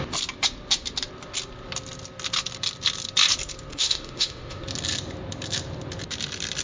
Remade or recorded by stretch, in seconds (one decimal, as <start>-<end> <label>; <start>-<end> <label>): 0.0-3.7 recorded; 3.7-4.6 remade; 4.6-6.6 recorded